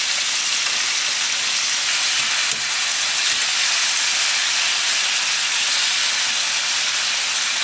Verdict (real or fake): real